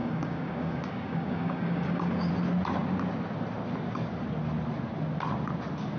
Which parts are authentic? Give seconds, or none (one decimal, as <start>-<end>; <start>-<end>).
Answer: 2.3-6.0